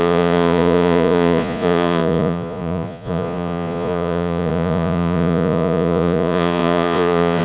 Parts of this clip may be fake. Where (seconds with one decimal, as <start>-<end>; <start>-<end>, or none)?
0.0-7.4